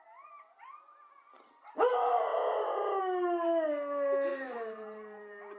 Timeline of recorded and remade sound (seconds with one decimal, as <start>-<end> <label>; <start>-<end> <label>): 0.0-4.3 recorded; 4.3-5.6 remade